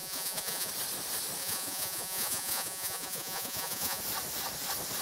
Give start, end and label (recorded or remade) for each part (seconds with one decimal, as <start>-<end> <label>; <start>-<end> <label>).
0.0-0.7 remade; 0.7-1.4 recorded; 1.4-4.0 remade; 4.0-5.0 recorded